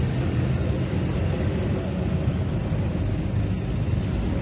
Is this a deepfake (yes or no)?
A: no